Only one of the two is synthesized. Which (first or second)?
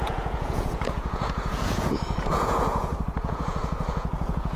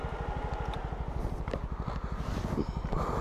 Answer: first